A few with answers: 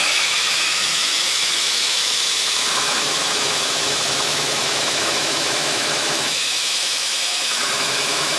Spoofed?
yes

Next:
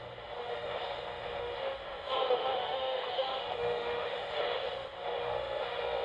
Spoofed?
yes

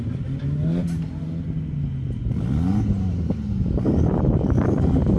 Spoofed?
no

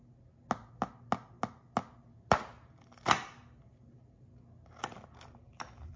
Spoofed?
no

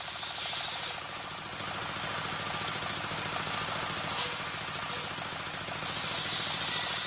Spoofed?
no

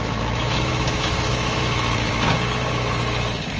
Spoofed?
yes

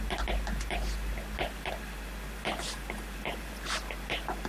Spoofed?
no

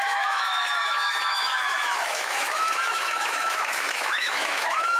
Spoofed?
yes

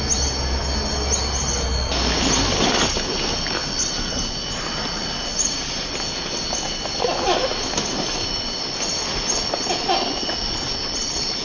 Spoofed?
no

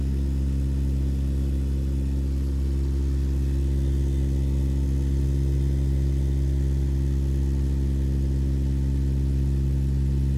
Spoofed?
no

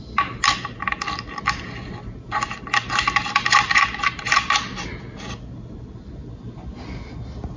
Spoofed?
no